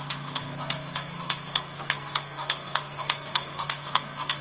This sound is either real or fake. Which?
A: fake